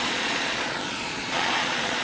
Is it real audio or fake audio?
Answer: fake